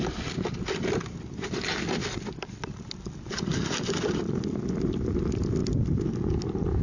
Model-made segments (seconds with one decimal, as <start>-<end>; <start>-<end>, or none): 1.0-1.8